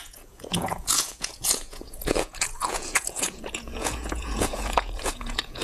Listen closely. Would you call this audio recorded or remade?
remade